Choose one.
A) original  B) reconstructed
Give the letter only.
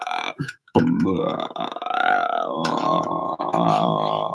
B